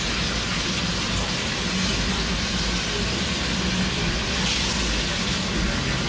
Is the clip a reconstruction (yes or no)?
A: no